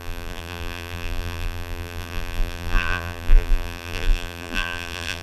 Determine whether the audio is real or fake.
fake